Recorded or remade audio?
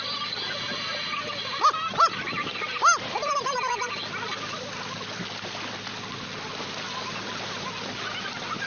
recorded